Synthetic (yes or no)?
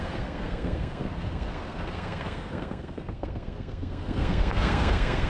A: yes